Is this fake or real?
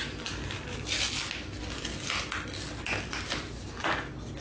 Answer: real